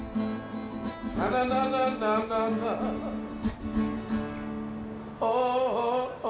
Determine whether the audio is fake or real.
real